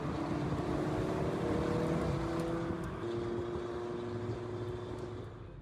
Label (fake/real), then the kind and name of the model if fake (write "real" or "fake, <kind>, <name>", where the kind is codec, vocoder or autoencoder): real